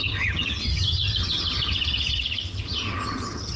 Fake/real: fake